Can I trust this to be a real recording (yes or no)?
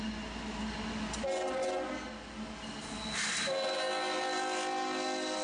yes